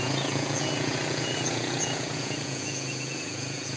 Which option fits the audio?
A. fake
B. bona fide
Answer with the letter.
A